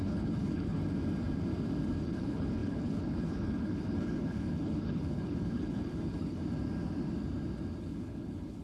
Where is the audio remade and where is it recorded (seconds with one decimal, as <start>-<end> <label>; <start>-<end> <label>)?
0.0-0.8 remade; 0.8-2.0 recorded; 2.0-6.4 remade; 6.4-7.8 recorded; 7.8-8.6 remade